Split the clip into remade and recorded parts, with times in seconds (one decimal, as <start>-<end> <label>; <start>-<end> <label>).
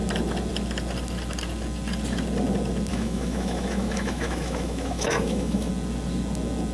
0.0-2.9 recorded; 2.9-5.7 remade; 5.7-6.7 recorded